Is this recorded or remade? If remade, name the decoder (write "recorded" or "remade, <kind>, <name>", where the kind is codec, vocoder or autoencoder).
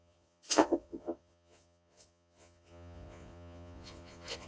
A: remade, vocoder, Vocos